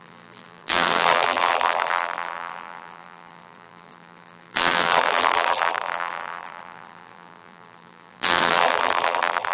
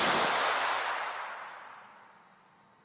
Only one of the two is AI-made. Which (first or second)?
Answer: first